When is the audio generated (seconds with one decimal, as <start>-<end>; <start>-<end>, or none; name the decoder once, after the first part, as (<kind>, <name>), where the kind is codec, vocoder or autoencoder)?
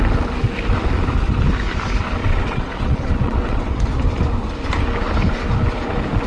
2.2-3.8 (vocoder, WaveNeXt)